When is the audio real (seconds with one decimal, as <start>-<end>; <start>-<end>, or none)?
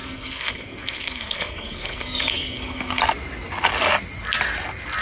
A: 3.0-5.0